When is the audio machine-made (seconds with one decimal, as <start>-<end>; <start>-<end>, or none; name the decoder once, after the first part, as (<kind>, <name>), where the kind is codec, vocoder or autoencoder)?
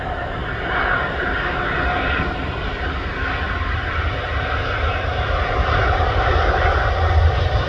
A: none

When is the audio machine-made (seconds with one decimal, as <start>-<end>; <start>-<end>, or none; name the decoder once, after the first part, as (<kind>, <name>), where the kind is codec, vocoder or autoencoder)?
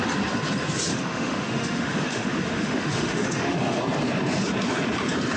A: 0.9-3.8 (autoencoder, DAC-VAE)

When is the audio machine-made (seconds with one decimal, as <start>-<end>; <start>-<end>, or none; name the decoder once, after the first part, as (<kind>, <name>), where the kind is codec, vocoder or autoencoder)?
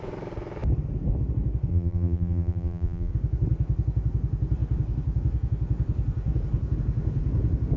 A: 1.7-3.1 (vocoder, BigVGAN v2)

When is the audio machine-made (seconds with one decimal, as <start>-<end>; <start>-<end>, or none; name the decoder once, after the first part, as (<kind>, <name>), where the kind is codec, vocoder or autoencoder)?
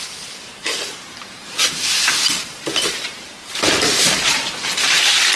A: 0.0-5.4 (vocoder, BigVGAN v2)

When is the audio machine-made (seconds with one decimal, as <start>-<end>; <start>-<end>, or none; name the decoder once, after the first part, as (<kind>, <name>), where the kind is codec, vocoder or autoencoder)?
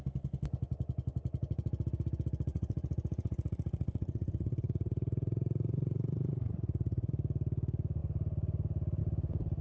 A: 2.5-7.1 (vocoder, Vocos)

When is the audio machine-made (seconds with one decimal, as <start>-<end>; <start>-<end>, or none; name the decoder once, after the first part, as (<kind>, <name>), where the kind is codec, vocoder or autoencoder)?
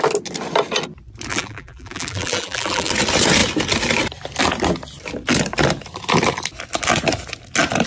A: 1.3-2.9 (vocoder, BigVGAN v2)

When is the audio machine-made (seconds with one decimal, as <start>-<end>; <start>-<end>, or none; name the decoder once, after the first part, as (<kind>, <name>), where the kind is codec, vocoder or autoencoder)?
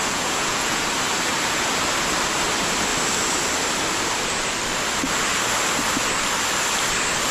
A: 0.0-0.8 (vocoder, Vocos)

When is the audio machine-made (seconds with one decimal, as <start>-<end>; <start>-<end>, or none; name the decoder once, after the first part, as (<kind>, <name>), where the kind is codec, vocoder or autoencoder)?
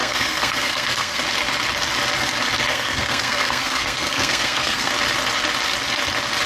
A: 0.0-1.2 (codec, SNAC); 2.7-4.9